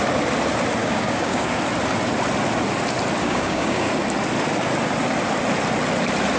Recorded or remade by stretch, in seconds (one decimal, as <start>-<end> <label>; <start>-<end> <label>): 0.0-0.8 recorded; 0.8-1.6 remade; 1.6-3.2 recorded; 3.2-3.9 remade; 3.9-6.4 recorded